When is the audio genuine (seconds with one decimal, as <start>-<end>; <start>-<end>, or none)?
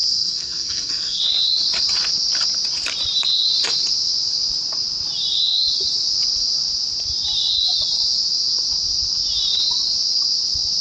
1.2-10.8